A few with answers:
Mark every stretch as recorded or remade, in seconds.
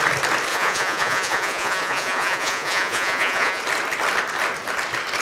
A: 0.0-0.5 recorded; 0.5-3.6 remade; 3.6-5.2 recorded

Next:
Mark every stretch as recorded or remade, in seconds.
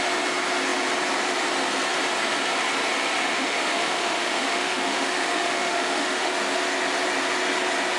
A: 0.0-3.2 recorded; 3.2-6.3 remade; 6.3-8.0 recorded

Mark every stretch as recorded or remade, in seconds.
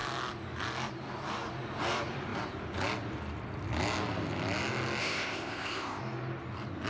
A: 0.0-5.0 recorded; 5.0-6.0 remade; 6.0-6.9 recorded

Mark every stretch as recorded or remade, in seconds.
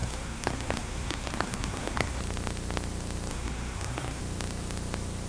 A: 0.0-2.2 remade; 2.2-3.3 recorded; 3.3-4.2 remade; 4.2-5.3 recorded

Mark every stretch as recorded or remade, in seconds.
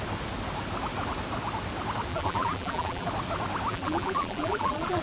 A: 0.0-2.1 recorded; 2.1-3.1 remade; 3.1-3.7 recorded; 3.7-5.0 remade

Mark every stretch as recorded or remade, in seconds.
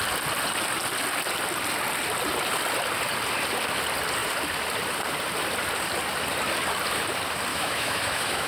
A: 0.0-7.5 recorded; 7.5-8.5 remade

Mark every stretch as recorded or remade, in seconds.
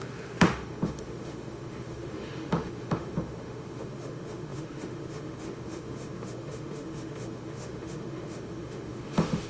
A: 0.0-9.5 remade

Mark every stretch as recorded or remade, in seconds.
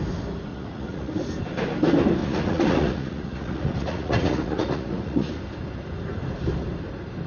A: 0.0-0.5 recorded; 0.5-1.1 remade; 1.1-2.2 recorded; 2.2-5.3 remade; 5.3-7.3 recorded